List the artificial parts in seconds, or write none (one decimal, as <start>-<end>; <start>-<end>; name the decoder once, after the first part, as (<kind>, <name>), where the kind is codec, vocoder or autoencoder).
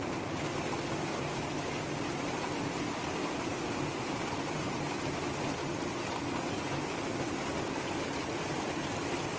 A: 3.2-4.9 (vocoder, BigVGAN v2)